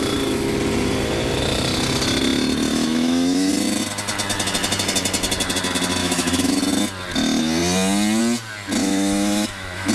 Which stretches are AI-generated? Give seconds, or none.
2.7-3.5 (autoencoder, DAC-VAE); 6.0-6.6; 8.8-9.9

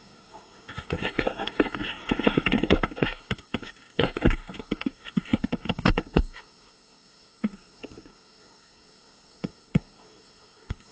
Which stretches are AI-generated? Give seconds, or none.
0.0-10.9 (codec, SNAC)

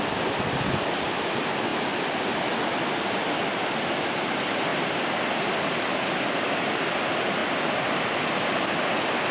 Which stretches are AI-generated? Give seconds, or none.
none

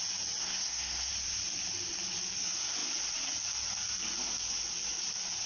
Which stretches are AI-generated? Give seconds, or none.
0.4-1.1 (codec, SNAC)